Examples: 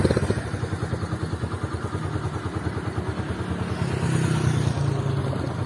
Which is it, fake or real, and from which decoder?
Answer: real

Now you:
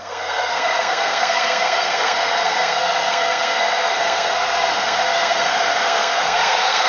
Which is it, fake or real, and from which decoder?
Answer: fake, codec, SNAC